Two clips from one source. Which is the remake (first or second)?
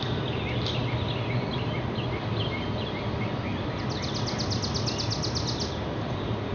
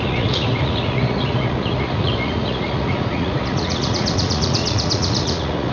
second